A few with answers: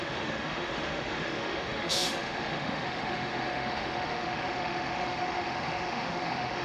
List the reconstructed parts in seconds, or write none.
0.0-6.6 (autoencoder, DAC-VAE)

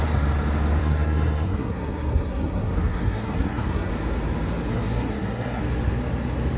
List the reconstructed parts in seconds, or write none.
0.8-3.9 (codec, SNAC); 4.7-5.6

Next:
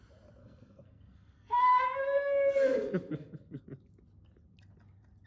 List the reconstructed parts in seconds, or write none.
0.4-3.6 (codec, SNAC)